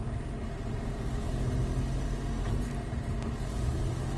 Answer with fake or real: real